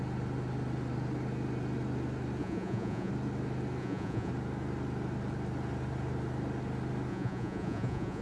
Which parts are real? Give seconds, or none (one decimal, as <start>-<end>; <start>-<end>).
0.0-2.4; 3.1-3.8; 4.3-7.1